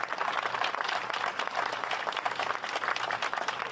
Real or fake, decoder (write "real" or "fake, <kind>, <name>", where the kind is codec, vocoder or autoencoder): fake, vocoder, BigVGAN v2